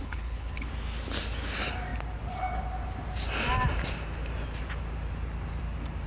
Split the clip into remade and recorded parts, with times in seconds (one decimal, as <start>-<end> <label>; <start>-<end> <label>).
0.0-0.7 remade; 0.7-6.1 recorded